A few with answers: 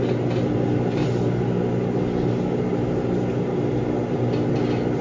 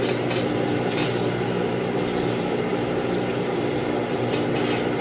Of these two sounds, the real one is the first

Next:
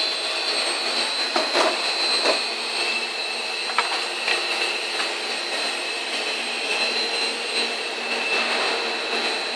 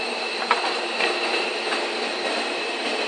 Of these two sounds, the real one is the first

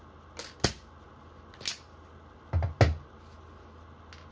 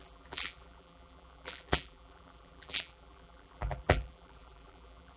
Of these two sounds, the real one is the first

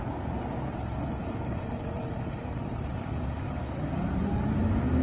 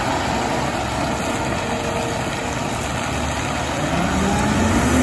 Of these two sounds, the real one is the second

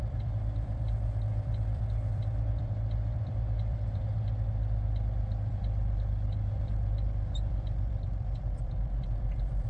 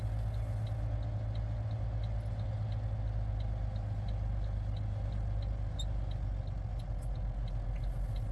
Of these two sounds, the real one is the second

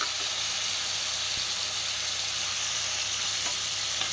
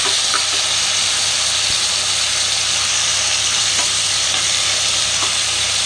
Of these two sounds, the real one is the first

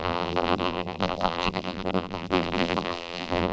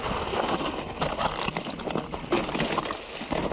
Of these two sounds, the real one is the second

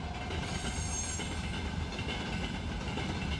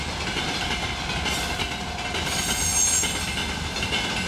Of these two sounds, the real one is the second